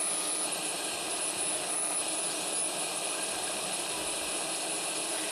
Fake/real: real